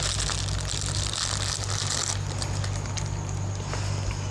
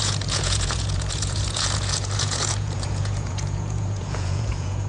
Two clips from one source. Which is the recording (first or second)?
first